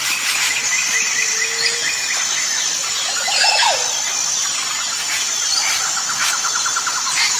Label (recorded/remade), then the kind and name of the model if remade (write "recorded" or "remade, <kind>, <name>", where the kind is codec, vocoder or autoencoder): recorded